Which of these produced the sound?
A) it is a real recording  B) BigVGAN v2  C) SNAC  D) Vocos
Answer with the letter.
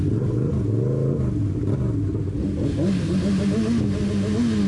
A